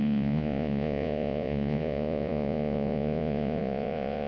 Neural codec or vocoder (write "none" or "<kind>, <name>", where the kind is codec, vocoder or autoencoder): vocoder, Vocos